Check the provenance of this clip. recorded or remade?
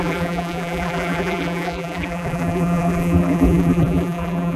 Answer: remade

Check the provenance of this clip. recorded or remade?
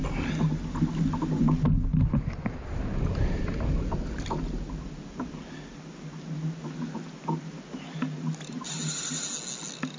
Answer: recorded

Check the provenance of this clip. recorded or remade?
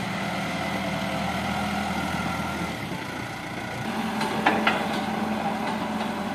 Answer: recorded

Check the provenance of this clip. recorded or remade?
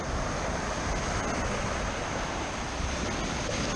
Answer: recorded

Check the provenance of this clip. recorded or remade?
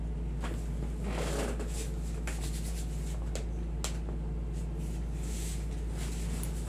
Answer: recorded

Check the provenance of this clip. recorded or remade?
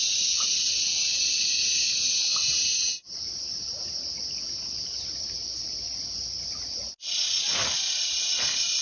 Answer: recorded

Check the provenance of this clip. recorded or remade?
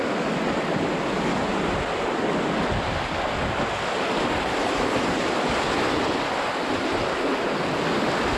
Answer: recorded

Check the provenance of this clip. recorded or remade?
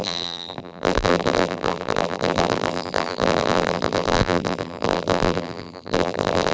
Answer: remade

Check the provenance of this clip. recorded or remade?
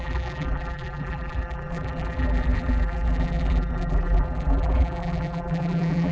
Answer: remade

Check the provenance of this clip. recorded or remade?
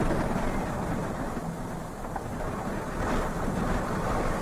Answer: recorded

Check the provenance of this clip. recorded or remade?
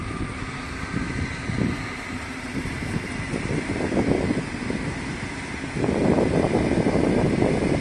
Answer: recorded